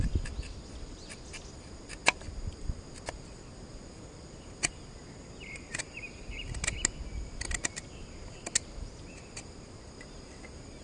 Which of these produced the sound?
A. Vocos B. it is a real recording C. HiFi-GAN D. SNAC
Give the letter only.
B